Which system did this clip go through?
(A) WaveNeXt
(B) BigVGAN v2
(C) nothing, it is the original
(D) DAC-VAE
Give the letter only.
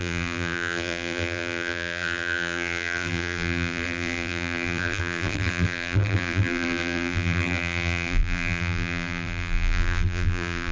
B